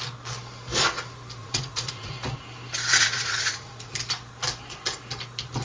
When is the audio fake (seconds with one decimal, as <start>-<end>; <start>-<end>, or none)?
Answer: 1.4-2.1; 2.9-3.9